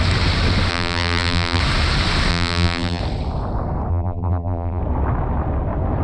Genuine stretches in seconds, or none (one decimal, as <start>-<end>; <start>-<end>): 0.0-0.7; 1.6-2.3; 3.0-3.9; 4.8-6.0